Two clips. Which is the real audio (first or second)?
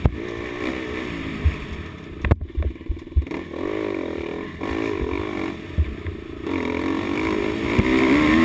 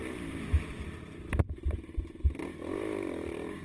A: first